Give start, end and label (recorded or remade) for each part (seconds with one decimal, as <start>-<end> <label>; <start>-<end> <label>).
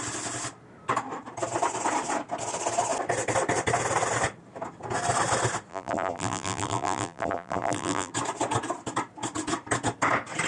0.0-5.7 recorded; 5.7-8.1 remade; 8.1-10.5 recorded